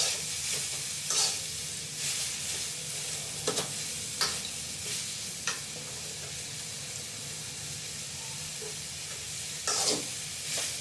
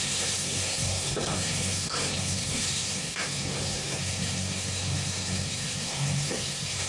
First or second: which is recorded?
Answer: first